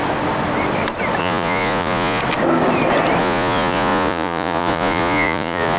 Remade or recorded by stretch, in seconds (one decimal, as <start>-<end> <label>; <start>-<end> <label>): 0.0-1.2 recorded; 1.2-2.2 remade; 2.2-3.2 recorded; 3.2-5.8 remade